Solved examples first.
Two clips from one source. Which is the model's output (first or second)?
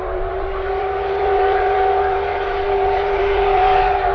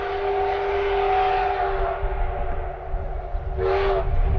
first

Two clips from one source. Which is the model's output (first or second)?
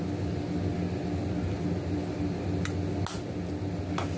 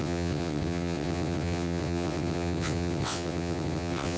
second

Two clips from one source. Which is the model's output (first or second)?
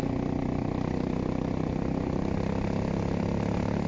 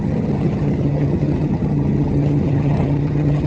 second